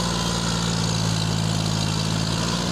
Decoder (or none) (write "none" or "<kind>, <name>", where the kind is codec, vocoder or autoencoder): none